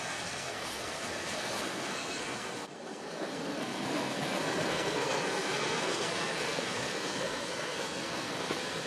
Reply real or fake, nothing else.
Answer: fake